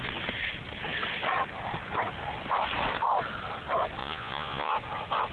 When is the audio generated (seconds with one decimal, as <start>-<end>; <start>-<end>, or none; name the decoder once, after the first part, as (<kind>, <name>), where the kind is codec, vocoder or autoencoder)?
4.0-4.7 (vocoder, Vocos)